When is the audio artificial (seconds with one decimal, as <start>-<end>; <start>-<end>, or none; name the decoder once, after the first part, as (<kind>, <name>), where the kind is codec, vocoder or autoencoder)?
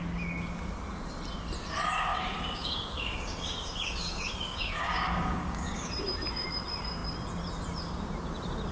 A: 2.1-5.9 (codec, DAC)